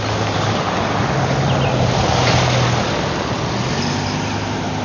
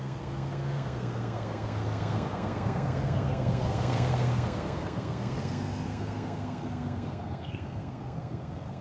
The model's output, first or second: second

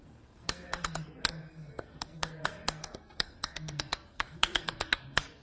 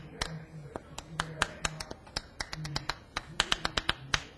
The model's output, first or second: first